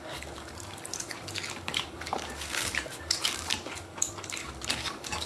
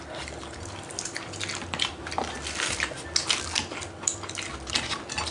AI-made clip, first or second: first